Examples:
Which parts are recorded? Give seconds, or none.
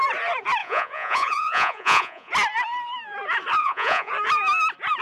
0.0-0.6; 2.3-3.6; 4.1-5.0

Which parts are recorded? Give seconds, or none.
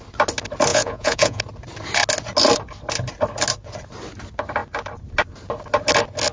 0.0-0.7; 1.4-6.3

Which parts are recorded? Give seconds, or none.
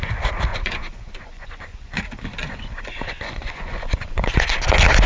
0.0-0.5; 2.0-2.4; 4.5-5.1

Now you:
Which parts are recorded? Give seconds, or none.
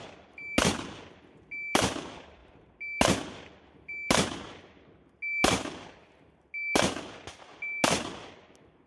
0.0-8.9